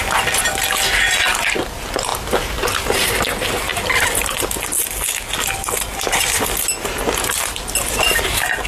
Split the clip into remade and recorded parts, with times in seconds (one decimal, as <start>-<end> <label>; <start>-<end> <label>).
0.0-8.7 recorded